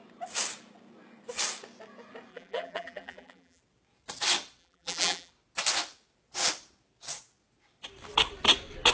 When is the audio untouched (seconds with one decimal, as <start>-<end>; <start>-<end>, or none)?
0.0-2.3; 3.6-4.6; 5.3-8.9